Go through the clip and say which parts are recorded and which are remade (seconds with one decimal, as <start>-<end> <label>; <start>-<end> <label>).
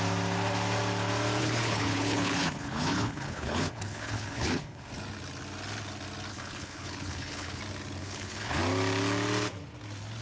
0.0-1.4 recorded; 1.4-4.9 remade; 4.9-6.3 recorded; 6.3-7.6 remade; 7.6-8.0 recorded; 8.0-8.6 remade; 8.6-10.2 recorded